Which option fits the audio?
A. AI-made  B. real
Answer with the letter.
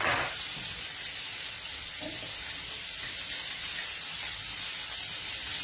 A